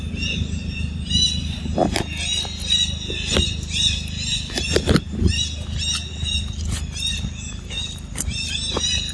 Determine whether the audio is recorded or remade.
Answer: recorded